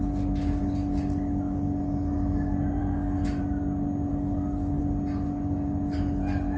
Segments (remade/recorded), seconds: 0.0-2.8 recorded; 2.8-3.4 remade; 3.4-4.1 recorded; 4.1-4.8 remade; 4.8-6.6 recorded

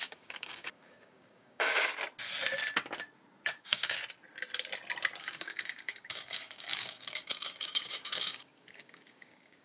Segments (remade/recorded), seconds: 0.0-1.9 remade; 1.9-3.6 recorded; 3.6-4.0 remade; 4.0-5.2 recorded; 5.2-9.6 remade

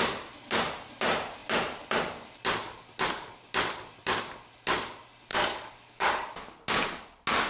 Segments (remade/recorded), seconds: 0.0-5.3 recorded; 5.3-6.3 remade; 6.3-7.5 recorded

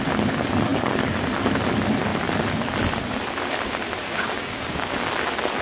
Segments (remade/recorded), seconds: 0.0-4.0 recorded; 4.0-5.1 remade; 5.1-5.6 recorded

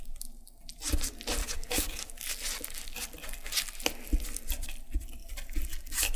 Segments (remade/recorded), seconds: 0.0-1.4 recorded; 1.4-2.1 remade; 2.1-6.2 recorded

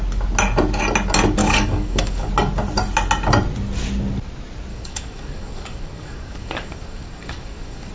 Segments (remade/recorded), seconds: 0.0-1.4 recorded; 1.4-2.3 remade; 2.3-4.7 recorded; 4.7-7.9 remade